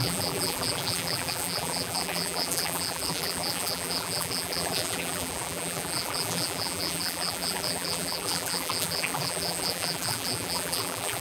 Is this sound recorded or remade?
remade